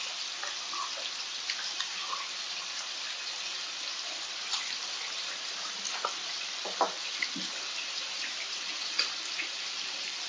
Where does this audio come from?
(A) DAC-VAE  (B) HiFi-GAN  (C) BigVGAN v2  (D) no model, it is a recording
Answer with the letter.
C